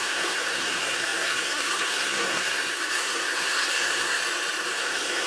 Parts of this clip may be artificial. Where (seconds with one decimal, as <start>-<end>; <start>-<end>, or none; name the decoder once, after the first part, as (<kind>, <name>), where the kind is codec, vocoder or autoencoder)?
0.0-4.2 (codec, SNAC); 4.7-5.3